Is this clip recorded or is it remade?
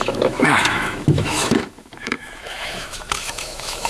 remade